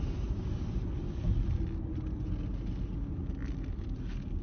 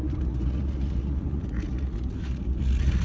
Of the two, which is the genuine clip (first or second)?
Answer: first